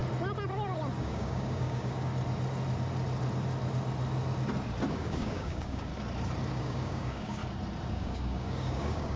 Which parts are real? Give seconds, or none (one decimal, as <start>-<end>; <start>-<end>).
0.0-1.0; 2.1-4.9; 5.9-6.5; 7.4-7.9

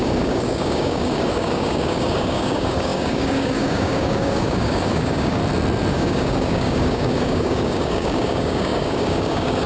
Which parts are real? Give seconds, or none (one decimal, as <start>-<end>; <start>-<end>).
5.4-5.9

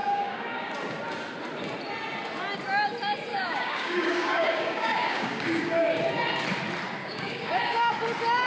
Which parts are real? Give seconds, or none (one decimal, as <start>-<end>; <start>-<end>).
0.7-3.3; 6.0-7.0; 7.9-8.5

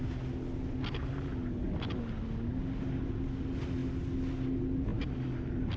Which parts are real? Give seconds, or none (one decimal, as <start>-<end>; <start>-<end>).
0.0-5.8

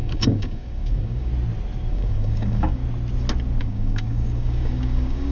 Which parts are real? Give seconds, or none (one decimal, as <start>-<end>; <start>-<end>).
1.3-1.9; 2.8-3.6

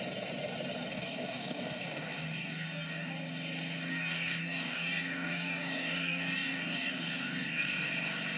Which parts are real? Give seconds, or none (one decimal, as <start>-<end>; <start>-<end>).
0.0-0.9; 3.1-3.9; 7.9-8.4